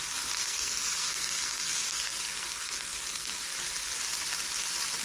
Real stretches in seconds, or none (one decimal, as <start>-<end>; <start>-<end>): 0.0-0.4; 3.4-5.0